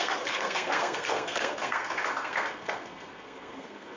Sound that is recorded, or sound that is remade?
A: remade